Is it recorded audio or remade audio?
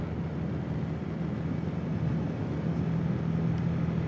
recorded